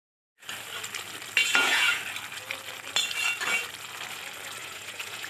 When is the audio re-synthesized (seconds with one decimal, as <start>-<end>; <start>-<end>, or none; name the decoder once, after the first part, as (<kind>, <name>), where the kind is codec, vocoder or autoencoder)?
1.4-2.0 (vocoder, Vocos); 4.6-5.3